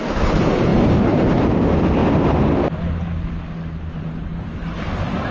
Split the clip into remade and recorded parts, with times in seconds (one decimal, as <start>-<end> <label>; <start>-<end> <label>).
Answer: 0.0-5.3 recorded